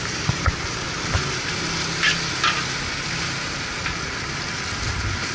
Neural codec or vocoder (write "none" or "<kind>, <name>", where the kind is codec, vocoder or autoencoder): none